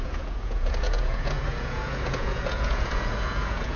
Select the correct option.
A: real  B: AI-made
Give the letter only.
B